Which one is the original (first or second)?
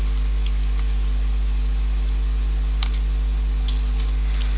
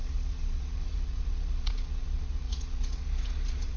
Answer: first